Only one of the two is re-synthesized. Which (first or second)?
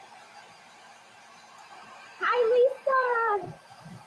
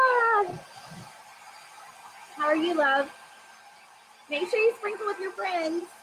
first